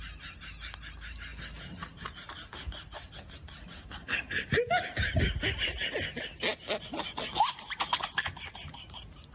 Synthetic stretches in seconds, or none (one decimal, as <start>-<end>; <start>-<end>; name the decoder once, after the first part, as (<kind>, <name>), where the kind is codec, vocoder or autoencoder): none